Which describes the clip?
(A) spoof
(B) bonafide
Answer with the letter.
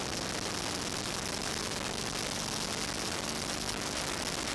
B